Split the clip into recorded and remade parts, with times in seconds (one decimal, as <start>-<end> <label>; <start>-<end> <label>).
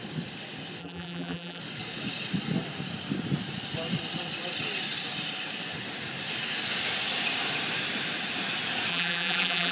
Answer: 0.0-0.8 recorded; 0.8-1.6 remade; 1.6-8.9 recorded; 8.9-9.7 remade